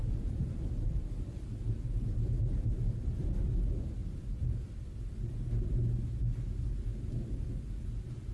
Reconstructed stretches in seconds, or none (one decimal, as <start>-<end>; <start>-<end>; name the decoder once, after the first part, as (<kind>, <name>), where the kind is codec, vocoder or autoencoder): 0.0-3.2 (vocoder, BigVGAN v2)